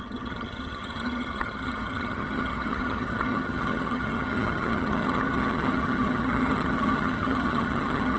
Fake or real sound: fake